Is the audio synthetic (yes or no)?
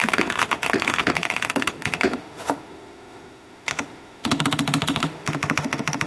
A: yes